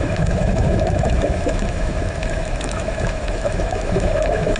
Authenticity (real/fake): fake